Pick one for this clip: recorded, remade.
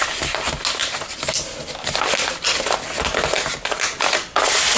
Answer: recorded